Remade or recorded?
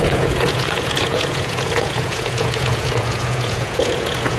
remade